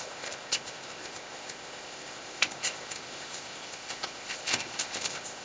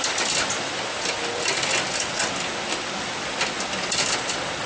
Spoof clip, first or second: first